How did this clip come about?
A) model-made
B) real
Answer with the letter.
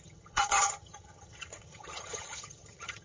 A